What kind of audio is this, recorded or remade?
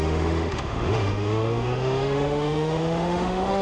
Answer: remade